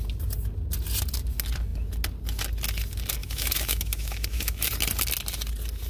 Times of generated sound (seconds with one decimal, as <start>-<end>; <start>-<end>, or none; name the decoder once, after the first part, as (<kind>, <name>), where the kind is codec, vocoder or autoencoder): 3.2-4.6 (autoencoder, DAC-VAE)